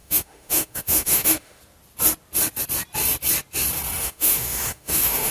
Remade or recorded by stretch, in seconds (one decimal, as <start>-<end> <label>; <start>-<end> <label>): 0.0-1.6 remade; 1.6-4.0 recorded; 4.0-5.3 remade

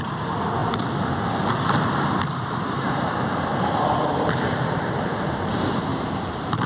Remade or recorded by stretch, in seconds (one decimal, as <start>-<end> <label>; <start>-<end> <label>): 0.0-3.5 recorded; 3.5-5.4 remade; 5.4-5.9 recorded; 5.9-6.7 remade

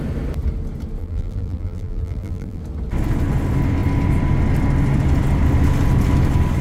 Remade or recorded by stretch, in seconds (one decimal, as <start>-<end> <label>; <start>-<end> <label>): 0.0-1.0 recorded; 1.0-2.6 remade; 2.6-6.6 recorded

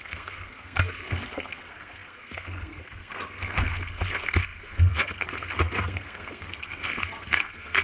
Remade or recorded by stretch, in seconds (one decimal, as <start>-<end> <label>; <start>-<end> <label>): 0.0-7.8 remade

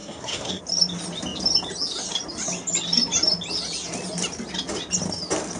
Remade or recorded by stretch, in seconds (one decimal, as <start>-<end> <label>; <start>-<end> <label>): 0.0-0.6 remade; 0.6-5.6 recorded

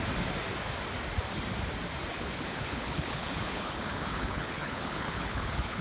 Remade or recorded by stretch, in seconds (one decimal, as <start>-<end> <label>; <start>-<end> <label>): 0.0-2.1 recorded; 2.1-5.8 remade